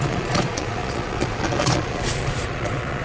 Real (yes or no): no